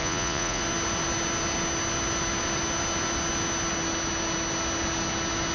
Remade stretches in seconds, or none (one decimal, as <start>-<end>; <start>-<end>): 0.0-0.6